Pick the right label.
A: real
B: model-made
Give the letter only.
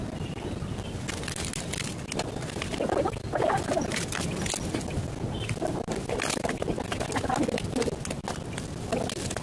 A